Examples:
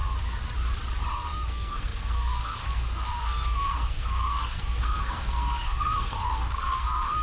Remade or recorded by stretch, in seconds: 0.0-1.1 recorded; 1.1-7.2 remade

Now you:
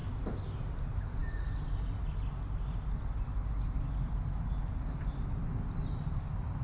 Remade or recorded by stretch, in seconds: 0.0-6.6 recorded

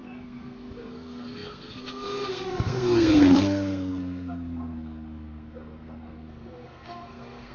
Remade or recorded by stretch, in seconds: 0.0-7.5 remade

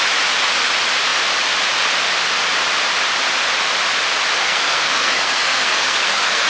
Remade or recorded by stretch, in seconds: 0.0-4.4 recorded; 4.4-6.5 remade

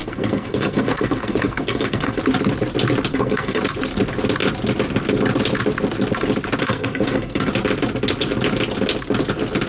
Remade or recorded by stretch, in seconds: 0.0-2.2 remade; 2.2-3.1 recorded; 3.1-3.6 remade; 3.6-6.6 recorded; 6.6-7.5 remade; 7.5-9.7 recorded

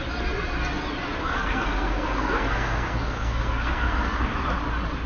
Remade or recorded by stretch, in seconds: 0.0-1.2 recorded; 1.2-4.3 remade; 4.3-5.1 recorded

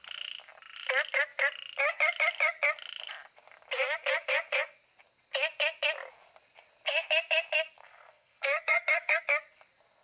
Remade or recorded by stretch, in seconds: 0.0-7.8 recorded; 7.8-9.2 remade; 9.2-10.0 recorded